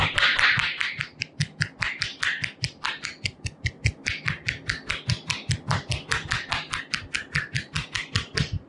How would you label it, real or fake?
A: real